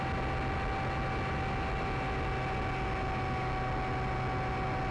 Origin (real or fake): real